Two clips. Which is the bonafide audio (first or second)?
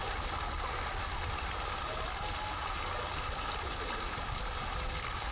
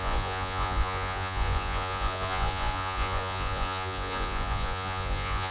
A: first